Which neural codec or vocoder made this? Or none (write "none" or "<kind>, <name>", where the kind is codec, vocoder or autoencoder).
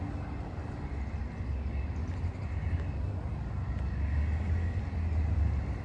none